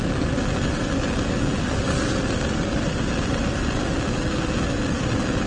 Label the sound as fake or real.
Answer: real